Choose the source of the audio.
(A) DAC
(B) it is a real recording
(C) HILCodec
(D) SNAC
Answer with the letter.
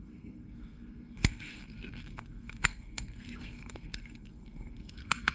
D